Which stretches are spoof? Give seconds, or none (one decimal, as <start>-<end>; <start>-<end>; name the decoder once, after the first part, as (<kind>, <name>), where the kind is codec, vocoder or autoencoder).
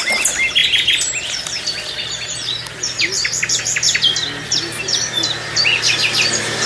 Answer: none